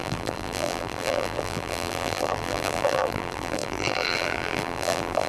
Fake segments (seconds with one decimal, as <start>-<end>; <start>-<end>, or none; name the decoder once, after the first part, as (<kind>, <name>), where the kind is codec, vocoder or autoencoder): 0.0-5.3 (vocoder, BigVGAN v2)